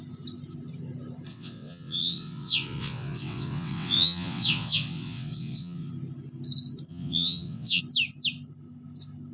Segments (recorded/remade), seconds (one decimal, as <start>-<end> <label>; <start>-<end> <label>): 0.0-1.3 recorded; 1.3-5.9 remade; 5.9-6.9 recorded; 6.9-7.8 remade; 7.8-9.3 recorded